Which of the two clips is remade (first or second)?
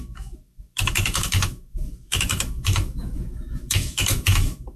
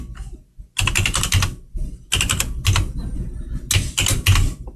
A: first